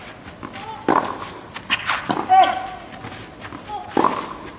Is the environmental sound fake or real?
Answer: real